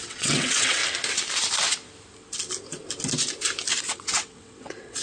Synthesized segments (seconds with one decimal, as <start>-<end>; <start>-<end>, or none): 0.0-0.8; 3.8-5.0

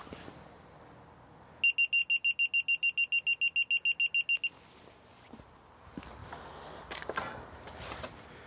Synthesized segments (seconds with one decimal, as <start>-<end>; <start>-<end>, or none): none

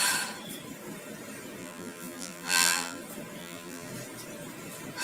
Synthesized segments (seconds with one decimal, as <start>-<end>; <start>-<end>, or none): 1.6-3.0; 3.4-3.9

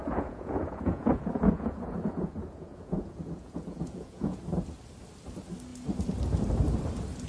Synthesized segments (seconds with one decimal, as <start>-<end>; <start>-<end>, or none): 0.0-4.4

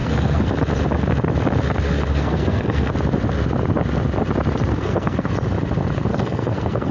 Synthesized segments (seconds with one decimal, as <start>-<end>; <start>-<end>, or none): 0.0-0.5; 2.1-2.9; 4.7-5.3; 6.1-6.9

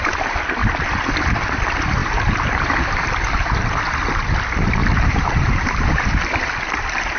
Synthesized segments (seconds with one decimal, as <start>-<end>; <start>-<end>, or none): 2.0-3.1; 4.8-6.3

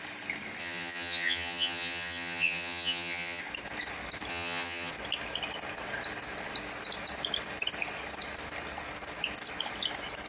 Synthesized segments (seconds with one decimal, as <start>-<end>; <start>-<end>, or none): 0.6-3.4; 4.3-4.9